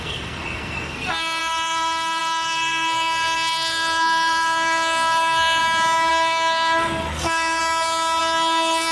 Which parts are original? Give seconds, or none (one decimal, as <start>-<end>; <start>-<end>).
5.6-6.1; 7.6-8.2